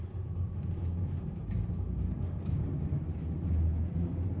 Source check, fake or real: real